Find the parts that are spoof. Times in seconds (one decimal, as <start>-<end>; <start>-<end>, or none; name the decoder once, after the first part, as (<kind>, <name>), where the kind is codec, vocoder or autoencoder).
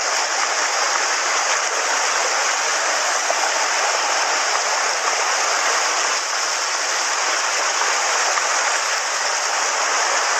none